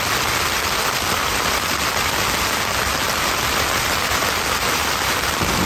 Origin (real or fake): real